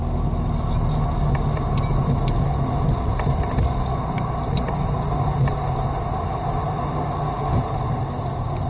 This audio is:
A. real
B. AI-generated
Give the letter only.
A